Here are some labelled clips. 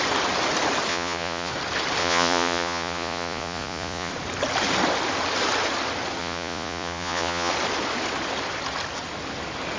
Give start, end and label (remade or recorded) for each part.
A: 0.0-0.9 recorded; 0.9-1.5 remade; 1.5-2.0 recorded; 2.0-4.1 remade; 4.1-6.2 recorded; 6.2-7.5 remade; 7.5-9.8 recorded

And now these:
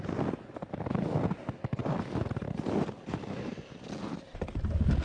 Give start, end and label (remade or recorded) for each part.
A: 0.0-5.0 recorded

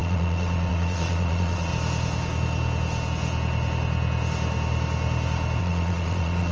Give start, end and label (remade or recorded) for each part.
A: 0.0-1.7 remade; 1.7-5.6 recorded; 5.6-6.5 remade